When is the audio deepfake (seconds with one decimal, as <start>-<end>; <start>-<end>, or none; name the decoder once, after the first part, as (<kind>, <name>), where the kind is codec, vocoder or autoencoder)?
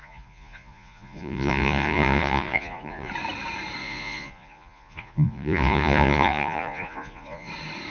0.0-3.1 (vocoder, Vocos); 3.8-7.5